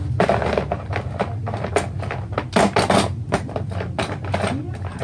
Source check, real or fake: real